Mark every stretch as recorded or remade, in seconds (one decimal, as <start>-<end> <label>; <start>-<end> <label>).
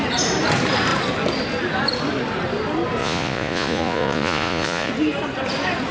0.0-3.0 recorded; 3.0-4.9 remade; 4.9-5.9 recorded